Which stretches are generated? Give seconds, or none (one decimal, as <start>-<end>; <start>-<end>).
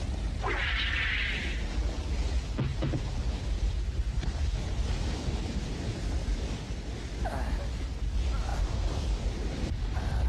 2.7-5.8; 8.5-10.3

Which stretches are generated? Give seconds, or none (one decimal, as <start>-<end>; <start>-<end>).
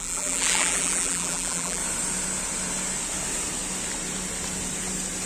0.0-1.8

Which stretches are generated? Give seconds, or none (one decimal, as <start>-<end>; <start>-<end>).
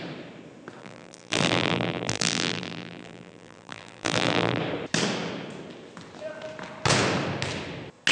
0.8-4.6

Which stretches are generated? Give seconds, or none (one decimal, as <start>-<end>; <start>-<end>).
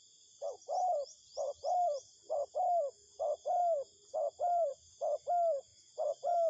0.8-2.5; 3.6-4.8; 5.7-6.5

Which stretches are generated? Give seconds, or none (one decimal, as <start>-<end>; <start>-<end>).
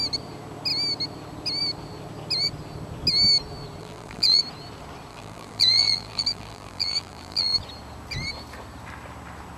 3.8-4.4; 5.1-7.6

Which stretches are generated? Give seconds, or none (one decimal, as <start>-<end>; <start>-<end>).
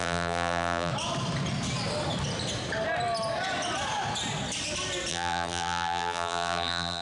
0.0-0.9; 5.1-7.0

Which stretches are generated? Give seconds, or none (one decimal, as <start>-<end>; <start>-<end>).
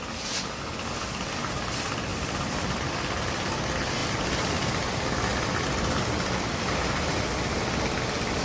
2.1-2.8; 4.0-4.8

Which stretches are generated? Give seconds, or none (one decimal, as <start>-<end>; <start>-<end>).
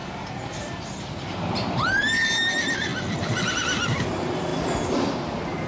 0.0-2.9; 3.5-4.5